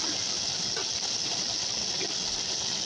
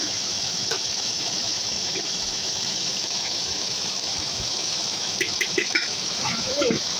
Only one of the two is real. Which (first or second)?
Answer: first